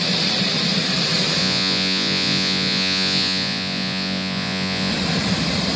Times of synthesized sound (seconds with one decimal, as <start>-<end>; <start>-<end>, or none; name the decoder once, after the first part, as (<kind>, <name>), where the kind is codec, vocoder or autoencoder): 1.4-4.9 (vocoder, Vocos)